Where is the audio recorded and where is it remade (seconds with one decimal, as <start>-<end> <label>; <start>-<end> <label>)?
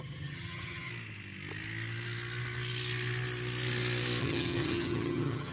0.0-0.9 remade; 0.9-4.2 recorded; 4.2-5.5 remade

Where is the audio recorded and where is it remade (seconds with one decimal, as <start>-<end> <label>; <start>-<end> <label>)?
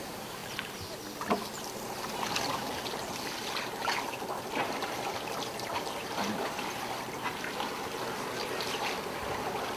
0.0-9.8 recorded